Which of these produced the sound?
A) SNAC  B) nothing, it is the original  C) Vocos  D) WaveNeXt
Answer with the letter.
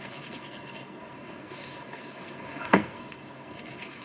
A